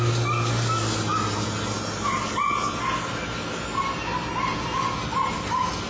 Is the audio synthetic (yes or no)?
no